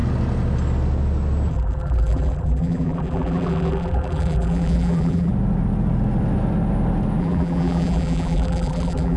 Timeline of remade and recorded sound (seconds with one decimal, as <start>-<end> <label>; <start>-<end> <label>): 0.0-1.5 recorded; 1.5-5.3 remade; 5.3-7.2 recorded; 7.2-9.2 remade